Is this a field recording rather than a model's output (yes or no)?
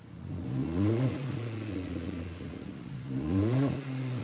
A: no